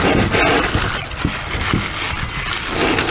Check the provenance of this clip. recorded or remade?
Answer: recorded